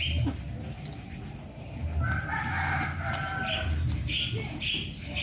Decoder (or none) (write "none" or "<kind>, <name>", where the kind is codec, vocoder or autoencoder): none